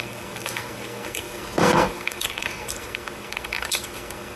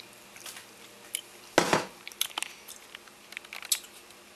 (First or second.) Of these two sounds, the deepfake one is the first